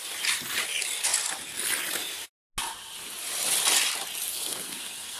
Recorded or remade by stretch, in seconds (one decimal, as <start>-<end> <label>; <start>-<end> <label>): 0.0-4.3 recorded; 4.3-5.2 remade